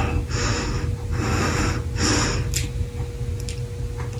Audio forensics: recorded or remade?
recorded